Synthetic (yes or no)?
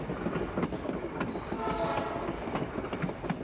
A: no